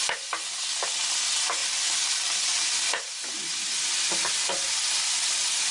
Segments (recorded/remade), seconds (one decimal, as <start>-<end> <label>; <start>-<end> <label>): 0.0-5.7 recorded